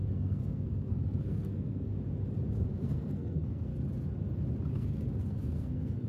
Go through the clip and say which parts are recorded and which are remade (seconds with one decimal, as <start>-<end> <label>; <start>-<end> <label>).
0.0-1.9 remade; 1.9-2.5 recorded; 2.5-3.7 remade; 3.7-4.7 recorded; 4.7-6.1 remade